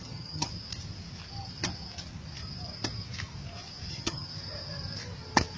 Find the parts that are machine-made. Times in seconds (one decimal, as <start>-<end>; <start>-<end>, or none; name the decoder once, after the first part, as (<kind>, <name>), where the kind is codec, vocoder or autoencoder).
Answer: 0.0-0.5 (vocoder, HiFi-GAN); 3.9-4.3